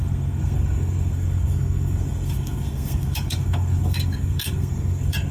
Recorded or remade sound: remade